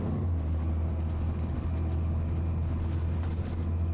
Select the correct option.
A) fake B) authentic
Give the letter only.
B